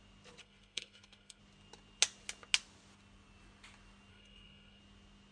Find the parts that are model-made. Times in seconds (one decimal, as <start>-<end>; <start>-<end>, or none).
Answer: 0.4-1.4; 4.1-4.8

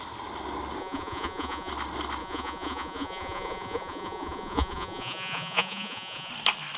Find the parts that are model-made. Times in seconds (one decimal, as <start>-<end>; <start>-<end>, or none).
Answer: 0.8-1.7; 2.2-6.3